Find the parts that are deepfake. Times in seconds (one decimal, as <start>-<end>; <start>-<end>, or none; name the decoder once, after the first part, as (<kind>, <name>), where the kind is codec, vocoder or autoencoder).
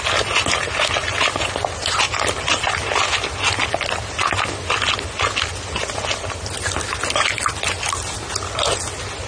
none